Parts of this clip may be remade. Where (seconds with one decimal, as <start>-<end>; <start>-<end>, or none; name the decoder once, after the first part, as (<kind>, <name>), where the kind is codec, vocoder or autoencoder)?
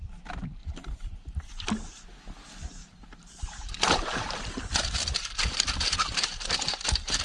0.6-2.0 (vocoder, BigVGAN v2); 2.8-7.2